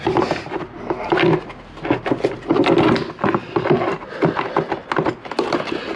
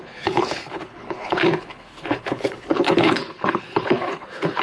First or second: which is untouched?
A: first